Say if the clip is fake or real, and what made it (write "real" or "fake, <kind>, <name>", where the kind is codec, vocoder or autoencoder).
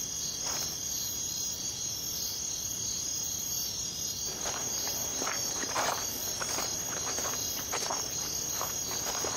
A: real